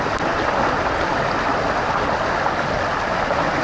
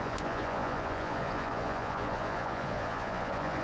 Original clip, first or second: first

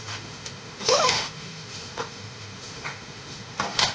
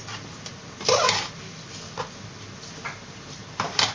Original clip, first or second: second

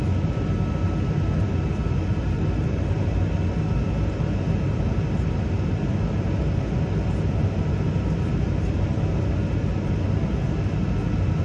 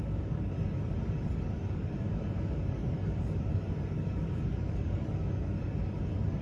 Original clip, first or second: first